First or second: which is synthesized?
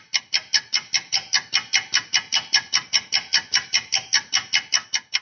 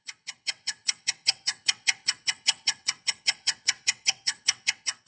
second